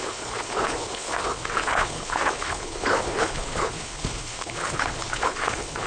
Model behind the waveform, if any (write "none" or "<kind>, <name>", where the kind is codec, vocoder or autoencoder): codec, HILCodec